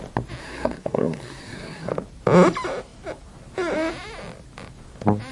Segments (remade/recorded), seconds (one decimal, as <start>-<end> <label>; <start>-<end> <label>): 0.0-0.4 recorded; 0.4-1.9 remade; 1.9-5.3 recorded